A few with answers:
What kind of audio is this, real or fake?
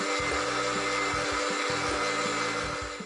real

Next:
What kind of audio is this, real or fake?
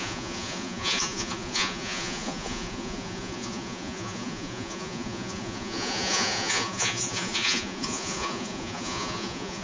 fake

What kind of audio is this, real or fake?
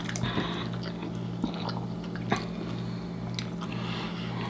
real